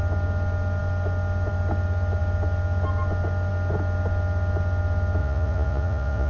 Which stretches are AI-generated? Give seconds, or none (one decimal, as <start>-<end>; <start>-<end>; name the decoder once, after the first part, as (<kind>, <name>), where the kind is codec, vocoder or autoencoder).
5.2-6.3 (vocoder, Vocos)